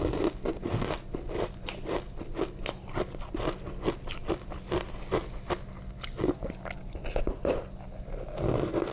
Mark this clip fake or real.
real